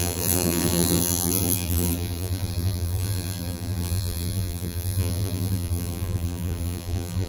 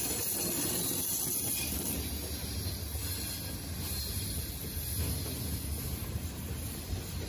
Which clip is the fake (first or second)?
first